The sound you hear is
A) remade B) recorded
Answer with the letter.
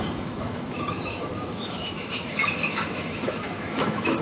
A